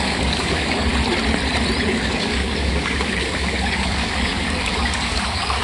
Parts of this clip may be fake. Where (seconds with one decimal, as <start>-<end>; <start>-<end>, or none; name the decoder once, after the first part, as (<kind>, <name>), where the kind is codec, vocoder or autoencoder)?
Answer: 0.0-0.9 (codec, DAC); 1.9-5.6